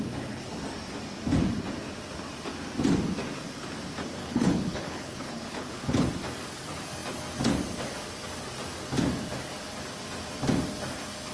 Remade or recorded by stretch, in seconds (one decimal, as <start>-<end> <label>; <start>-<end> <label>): 0.0-4.2 recorded; 4.2-6.1 remade; 6.1-11.3 recorded